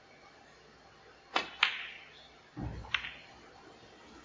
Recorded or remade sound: recorded